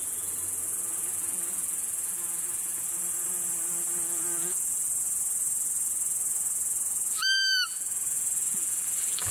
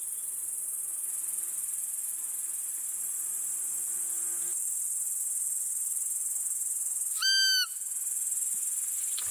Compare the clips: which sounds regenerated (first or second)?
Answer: first